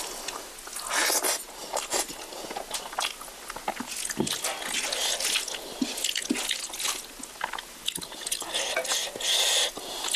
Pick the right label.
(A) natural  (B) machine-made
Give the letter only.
A